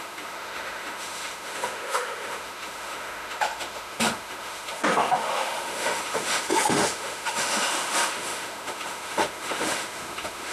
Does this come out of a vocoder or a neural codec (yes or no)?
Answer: yes